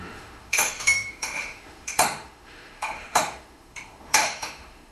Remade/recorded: remade